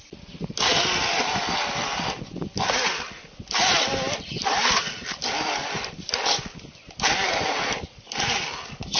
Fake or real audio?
real